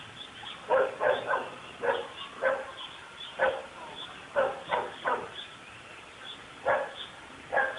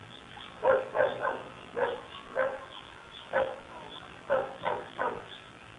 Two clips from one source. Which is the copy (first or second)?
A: second